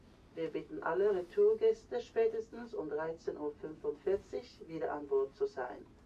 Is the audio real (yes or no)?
yes